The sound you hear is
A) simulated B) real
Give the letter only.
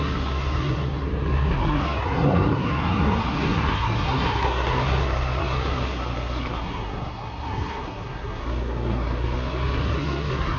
A